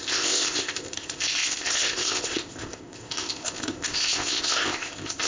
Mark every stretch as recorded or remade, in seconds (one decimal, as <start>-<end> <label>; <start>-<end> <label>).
0.0-5.3 remade